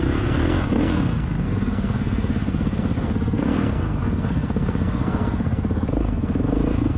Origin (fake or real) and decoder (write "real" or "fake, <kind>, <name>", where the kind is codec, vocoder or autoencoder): fake, codec, SNAC